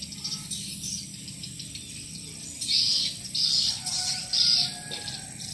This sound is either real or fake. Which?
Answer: real